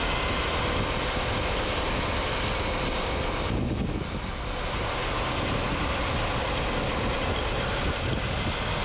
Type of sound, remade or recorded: recorded